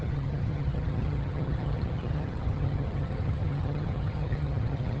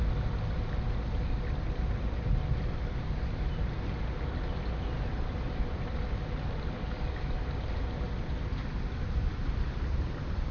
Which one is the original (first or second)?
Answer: second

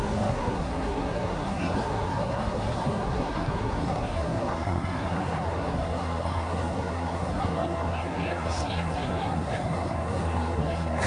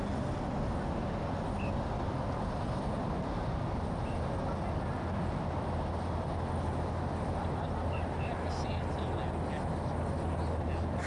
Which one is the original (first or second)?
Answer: second